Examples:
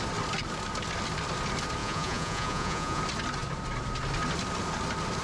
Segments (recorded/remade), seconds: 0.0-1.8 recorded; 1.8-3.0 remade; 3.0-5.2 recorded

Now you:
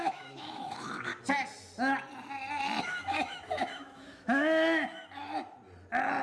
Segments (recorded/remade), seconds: 0.0-1.1 remade; 1.1-2.8 recorded; 2.8-5.0 remade; 5.0-6.2 recorded